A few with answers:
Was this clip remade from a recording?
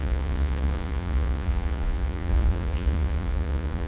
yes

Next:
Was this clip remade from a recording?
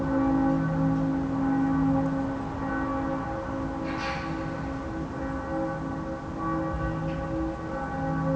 no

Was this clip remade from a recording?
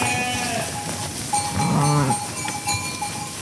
no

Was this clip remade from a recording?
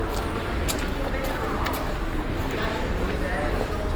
no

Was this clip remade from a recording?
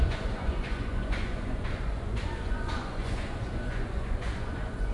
yes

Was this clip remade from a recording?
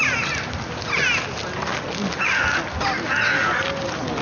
no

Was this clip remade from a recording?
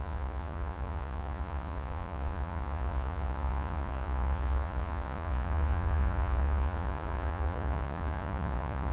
yes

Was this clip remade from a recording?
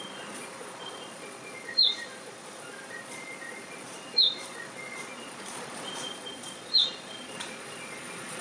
yes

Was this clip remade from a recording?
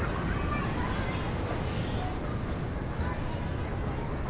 no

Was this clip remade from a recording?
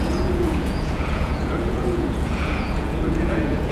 yes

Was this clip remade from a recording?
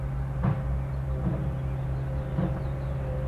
no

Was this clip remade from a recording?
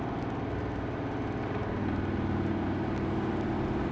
no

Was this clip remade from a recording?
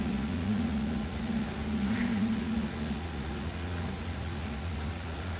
yes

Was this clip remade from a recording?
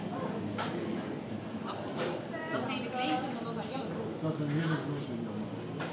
no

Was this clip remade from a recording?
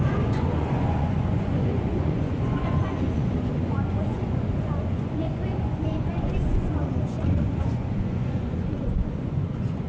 yes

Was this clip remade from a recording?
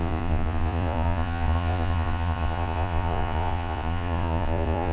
yes